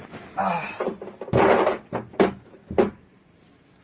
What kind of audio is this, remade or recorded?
recorded